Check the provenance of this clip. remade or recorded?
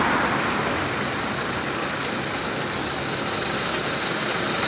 recorded